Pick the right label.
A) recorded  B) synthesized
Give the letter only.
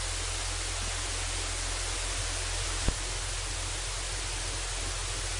A